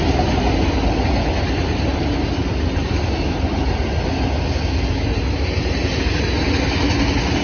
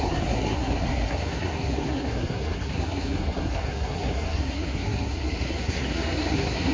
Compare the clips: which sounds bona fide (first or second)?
first